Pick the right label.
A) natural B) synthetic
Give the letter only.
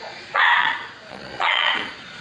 B